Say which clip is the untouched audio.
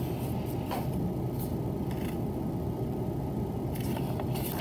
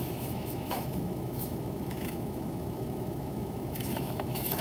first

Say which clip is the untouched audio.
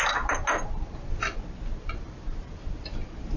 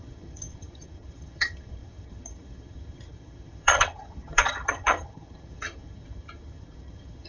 first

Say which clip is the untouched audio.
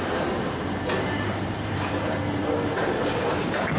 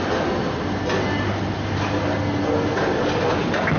second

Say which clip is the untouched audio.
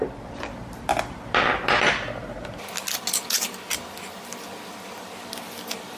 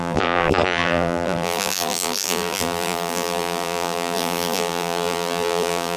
first